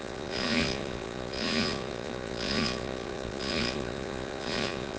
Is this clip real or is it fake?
fake